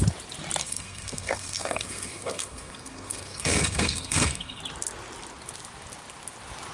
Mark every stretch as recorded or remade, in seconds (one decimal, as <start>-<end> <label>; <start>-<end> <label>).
0.0-0.6 recorded; 0.6-4.6 remade; 4.6-6.7 recorded